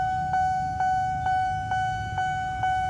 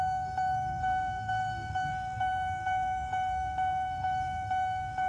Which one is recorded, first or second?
first